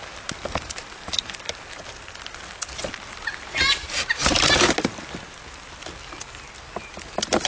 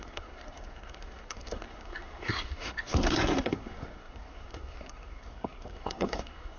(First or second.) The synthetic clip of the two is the second